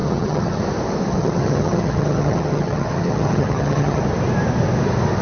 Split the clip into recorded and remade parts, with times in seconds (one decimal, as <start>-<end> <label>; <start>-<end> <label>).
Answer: 0.0-0.6 remade; 0.6-1.1 recorded; 1.1-4.0 remade; 4.0-5.2 recorded